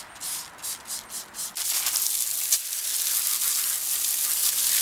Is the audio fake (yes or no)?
no